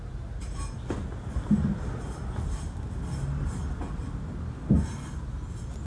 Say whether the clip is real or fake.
real